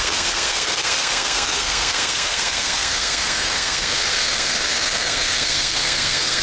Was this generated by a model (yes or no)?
yes